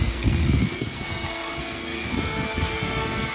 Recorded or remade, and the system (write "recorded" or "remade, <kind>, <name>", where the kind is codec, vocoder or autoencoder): remade, codec, SNAC